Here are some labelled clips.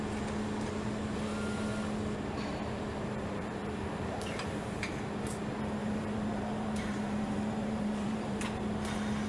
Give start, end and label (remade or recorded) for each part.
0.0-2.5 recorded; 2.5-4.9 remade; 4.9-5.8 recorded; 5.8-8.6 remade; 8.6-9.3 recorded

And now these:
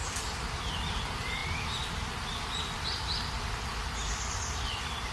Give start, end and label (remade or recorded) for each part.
0.0-1.4 remade; 1.4-2.4 recorded; 2.4-5.1 remade

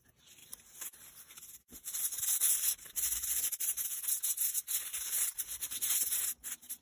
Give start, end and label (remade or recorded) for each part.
0.0-0.4 recorded; 0.4-3.8 remade; 3.8-4.9 recorded; 4.9-6.1 remade; 6.1-6.8 recorded

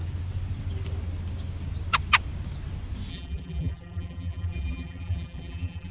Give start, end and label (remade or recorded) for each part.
0.0-3.1 recorded; 3.1-5.9 remade

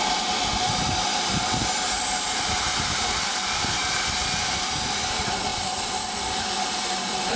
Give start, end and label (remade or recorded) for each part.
0.0-7.4 remade

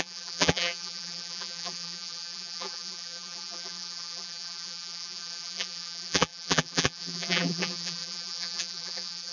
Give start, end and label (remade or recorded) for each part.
0.0-9.3 remade

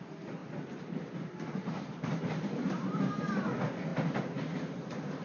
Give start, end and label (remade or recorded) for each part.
0.0-0.4 recorded; 0.4-3.5 remade; 3.5-3.9 recorded; 3.9-5.2 remade

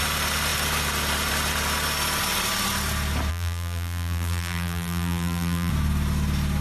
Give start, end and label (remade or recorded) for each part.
0.0-3.3 recorded; 3.3-5.7 remade; 5.7-6.6 recorded